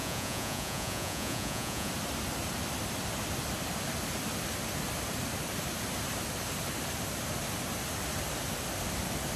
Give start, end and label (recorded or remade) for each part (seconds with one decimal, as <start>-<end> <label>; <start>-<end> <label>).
0.0-1.9 remade; 1.9-9.4 recorded